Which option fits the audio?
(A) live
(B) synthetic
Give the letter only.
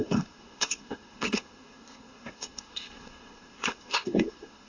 B